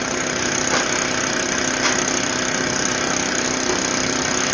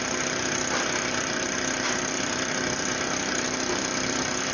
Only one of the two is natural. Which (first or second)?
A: first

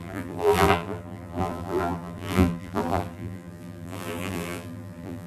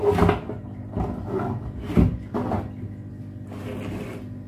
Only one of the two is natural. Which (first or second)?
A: second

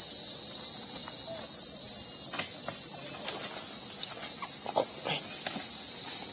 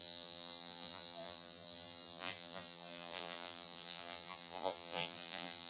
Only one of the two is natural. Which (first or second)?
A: first